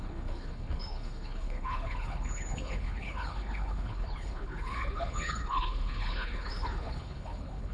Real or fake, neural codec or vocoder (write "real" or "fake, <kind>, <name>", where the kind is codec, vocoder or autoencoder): fake, codec, HILCodec